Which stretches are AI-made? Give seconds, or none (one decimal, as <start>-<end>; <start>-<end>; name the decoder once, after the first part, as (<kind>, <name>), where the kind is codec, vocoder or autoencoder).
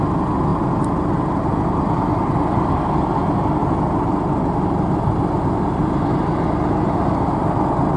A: none